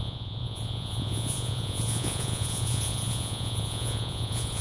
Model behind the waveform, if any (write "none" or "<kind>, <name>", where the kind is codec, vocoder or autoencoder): vocoder, Vocos